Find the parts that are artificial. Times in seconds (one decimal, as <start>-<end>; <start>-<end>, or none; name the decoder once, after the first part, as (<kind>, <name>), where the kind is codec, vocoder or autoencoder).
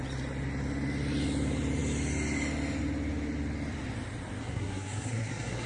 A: 4.4-5.7 (codec, SNAC)